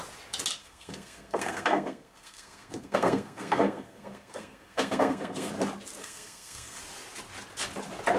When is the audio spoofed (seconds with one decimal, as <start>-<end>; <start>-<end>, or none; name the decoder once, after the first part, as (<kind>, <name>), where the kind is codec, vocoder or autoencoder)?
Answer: 0.6-5.5 (codec, SNAC); 6.0-6.8